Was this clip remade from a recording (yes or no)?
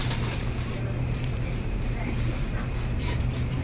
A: yes